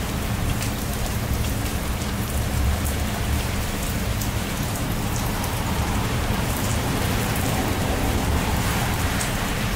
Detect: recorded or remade remade